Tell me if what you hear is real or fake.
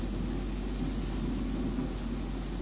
real